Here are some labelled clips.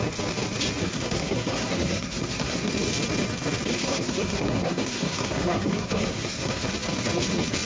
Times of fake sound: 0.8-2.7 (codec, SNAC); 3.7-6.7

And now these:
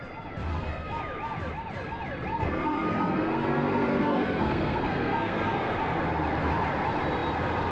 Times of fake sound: 0.5-1.0 (codec, SNAC); 2.3-5.7

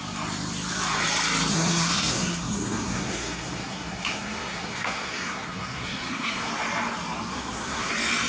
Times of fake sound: 1.5-6.5 (codec, SNAC); 7.3-7.9

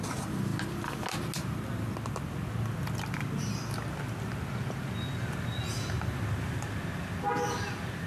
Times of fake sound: none